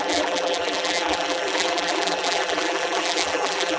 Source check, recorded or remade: remade